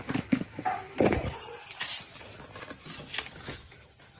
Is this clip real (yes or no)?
no